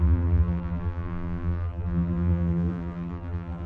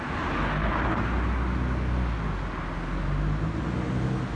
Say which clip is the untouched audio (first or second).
second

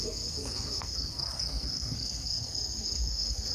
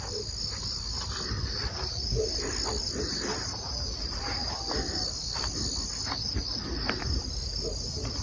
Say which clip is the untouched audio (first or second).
second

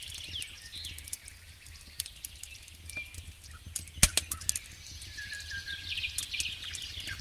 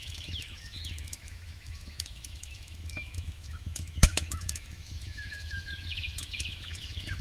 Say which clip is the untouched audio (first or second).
first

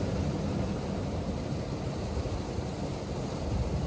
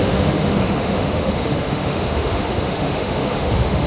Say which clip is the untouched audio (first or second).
first